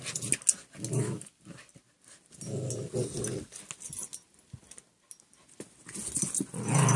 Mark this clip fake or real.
real